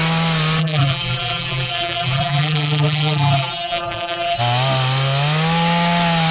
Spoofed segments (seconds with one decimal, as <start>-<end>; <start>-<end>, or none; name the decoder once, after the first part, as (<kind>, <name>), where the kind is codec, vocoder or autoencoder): 0.6-4.4 (vocoder, BigVGAN v2)